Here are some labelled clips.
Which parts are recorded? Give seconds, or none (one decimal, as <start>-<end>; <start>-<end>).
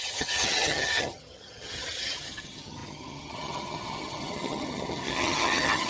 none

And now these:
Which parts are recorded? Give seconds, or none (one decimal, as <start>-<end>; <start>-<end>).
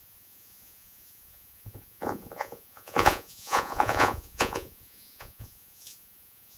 none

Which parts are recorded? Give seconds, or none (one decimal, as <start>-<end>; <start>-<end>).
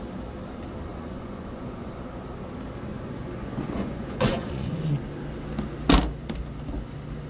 0.0-0.9; 1.9-2.9; 4.9-7.3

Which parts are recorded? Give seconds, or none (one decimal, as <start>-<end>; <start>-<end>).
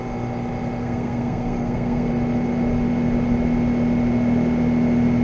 0.0-0.8; 2.1-5.2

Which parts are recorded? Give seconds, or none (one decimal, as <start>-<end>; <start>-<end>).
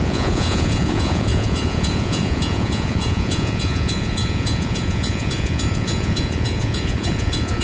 none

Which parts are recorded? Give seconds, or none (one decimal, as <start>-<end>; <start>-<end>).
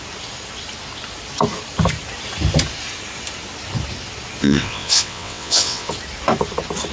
0.0-4.4; 5.9-6.9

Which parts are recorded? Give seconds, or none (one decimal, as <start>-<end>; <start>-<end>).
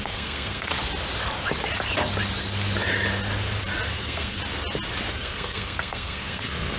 0.7-4.0; 4.4-5.1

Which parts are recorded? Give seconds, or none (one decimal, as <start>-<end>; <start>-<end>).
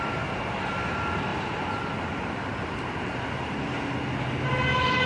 0.0-5.1